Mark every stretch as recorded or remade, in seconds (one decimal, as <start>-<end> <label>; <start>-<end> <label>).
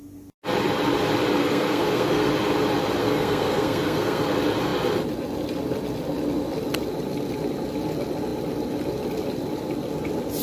0.0-1.4 recorded; 1.4-2.3 remade; 2.3-3.0 recorded; 3.0-4.2 remade; 4.2-10.4 recorded